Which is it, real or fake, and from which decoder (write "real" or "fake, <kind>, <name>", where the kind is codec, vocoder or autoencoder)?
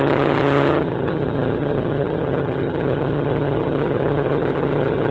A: fake, vocoder, HiFi-GAN